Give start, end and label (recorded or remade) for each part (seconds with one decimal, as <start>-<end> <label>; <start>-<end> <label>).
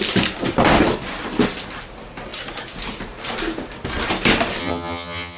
0.0-4.6 recorded; 4.6-5.4 remade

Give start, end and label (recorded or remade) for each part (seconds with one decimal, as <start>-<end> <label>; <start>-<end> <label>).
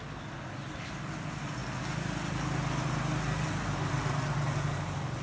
0.0-5.2 recorded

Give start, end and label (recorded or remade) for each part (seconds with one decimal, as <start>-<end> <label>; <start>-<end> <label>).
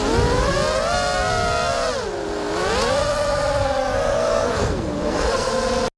0.0-4.1 recorded; 4.1-5.5 remade; 5.5-6.0 recorded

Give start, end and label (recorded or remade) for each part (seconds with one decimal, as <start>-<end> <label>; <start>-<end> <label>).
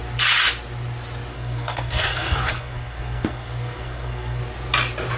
0.0-1.3 recorded; 1.3-4.4 remade; 4.4-5.2 recorded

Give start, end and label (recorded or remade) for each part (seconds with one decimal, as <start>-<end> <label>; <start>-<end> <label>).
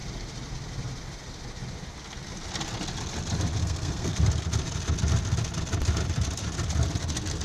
0.0-3.6 recorded; 3.6-4.2 remade; 4.2-7.4 recorded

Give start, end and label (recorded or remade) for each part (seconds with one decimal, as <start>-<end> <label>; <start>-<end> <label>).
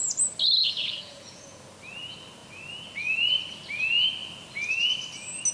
0.0-0.6 recorded; 0.6-1.6 remade; 1.6-5.5 recorded